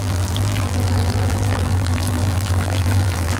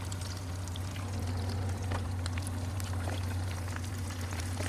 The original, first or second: second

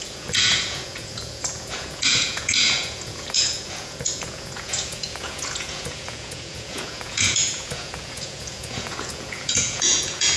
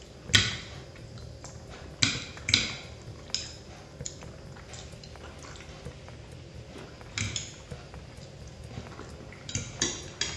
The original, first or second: second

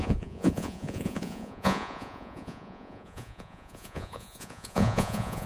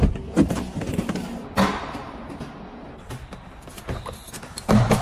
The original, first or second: second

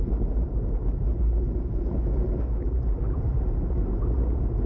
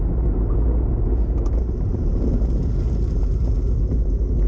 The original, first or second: second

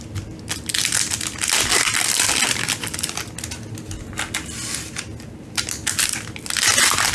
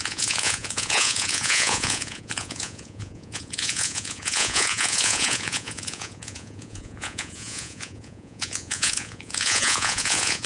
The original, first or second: first